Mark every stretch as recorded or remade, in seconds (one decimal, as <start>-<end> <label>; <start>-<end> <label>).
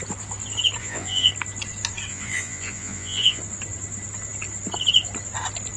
0.0-0.8 recorded; 0.8-1.3 remade; 1.3-2.1 recorded; 2.1-3.4 remade; 3.4-5.8 recorded